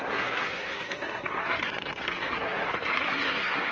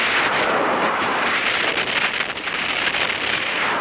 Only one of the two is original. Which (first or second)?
second